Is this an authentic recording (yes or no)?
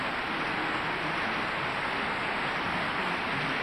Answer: yes